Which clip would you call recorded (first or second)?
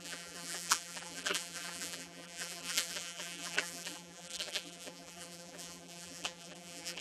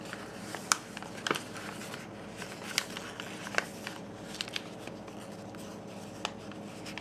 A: second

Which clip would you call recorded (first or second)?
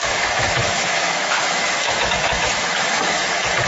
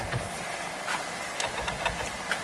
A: second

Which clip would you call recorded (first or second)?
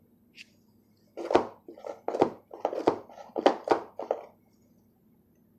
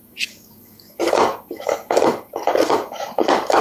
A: first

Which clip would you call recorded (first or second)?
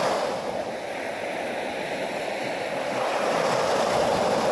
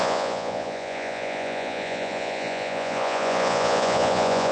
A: first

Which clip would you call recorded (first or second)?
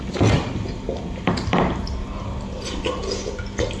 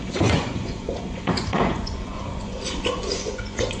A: first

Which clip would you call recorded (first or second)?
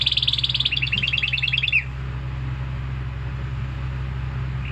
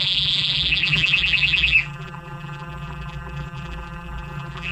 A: first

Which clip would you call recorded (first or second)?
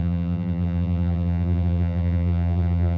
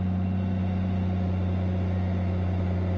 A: second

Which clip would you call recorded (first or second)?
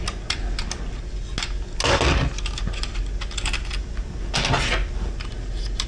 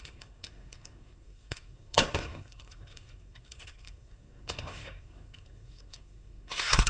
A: first